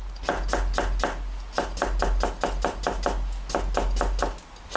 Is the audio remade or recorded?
recorded